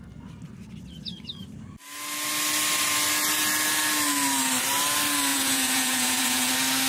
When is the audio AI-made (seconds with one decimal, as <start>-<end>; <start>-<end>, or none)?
5.3-6.5